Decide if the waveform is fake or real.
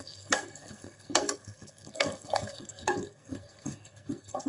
fake